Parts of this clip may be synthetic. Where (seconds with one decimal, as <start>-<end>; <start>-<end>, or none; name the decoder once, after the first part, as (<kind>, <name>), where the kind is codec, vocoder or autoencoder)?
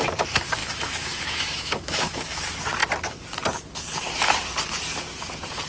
0.6-2.4 (autoencoder, DAC-VAE)